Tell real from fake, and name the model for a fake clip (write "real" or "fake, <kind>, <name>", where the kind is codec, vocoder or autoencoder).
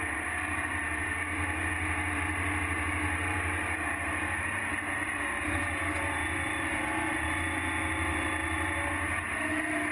fake, vocoder, BigVGAN v2